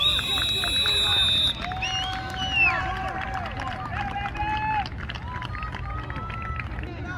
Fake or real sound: real